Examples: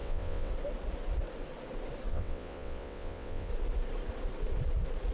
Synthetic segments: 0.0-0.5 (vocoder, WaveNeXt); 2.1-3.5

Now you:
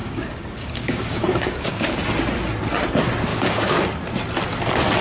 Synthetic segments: 0.0-2.0 (codec, DAC); 3.3-3.8

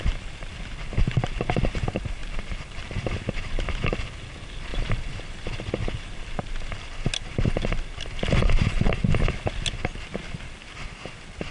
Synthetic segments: 2.2-3.0 (vocoder, BigVGAN v2); 4.7-5.2; 8.4-9.1